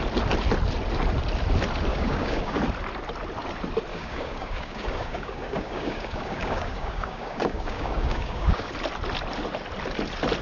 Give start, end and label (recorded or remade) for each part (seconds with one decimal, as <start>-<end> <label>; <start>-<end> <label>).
0.0-1.9 recorded; 1.9-2.6 remade; 2.6-3.9 recorded; 3.9-8.7 remade; 8.7-10.4 recorded